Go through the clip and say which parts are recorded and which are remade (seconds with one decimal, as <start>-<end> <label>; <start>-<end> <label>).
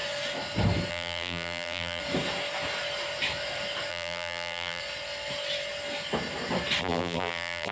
0.0-0.9 recorded; 0.9-2.0 remade; 2.0-3.9 recorded; 3.9-4.8 remade; 4.8-6.8 recorded; 6.8-7.7 remade